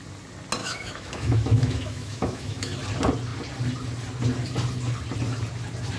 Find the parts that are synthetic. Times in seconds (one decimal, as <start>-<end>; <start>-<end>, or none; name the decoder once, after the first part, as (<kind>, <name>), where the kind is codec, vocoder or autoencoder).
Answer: 0.6-2.7 (autoencoder, DAC-VAE)

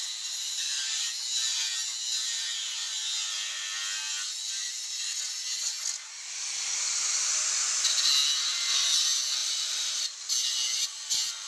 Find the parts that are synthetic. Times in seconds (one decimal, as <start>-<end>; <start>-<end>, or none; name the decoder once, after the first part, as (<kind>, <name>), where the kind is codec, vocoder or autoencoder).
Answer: 0.4-1.1 (vocoder, BigVGAN v2); 9.4-10.0

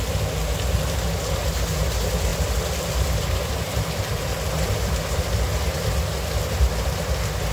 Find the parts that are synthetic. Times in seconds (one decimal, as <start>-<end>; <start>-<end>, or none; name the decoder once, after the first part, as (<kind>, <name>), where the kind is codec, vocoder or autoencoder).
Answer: 2.3-5.2 (vocoder, BigVGAN v2)

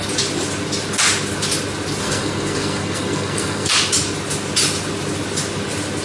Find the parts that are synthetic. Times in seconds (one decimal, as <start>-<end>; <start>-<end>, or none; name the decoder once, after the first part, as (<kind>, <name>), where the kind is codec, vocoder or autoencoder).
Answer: 2.0-3.7 (codec, SNAC)

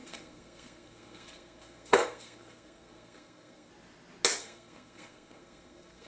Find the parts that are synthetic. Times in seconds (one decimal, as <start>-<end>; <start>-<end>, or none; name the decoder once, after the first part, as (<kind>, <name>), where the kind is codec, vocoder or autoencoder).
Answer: 0.0-3.7 (codec, SNAC); 4.4-6.1

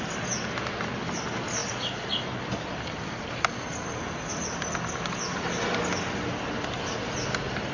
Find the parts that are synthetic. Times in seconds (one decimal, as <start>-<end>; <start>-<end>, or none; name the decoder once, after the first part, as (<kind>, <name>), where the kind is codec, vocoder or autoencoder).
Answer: none